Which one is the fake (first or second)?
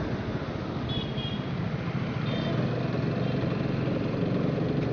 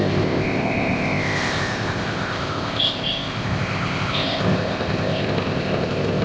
second